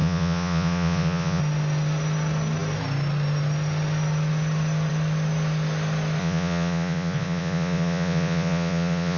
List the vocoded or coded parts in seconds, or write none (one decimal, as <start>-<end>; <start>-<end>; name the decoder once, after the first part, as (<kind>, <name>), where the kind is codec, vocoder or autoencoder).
0.0-1.4 (vocoder, Vocos); 6.2-9.2